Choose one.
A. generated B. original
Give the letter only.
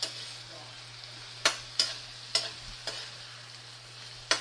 B